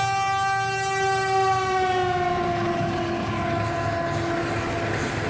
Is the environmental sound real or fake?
real